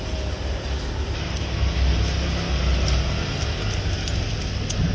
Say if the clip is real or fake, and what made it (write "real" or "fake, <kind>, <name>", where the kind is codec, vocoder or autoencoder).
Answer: real